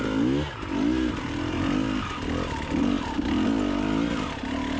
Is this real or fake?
real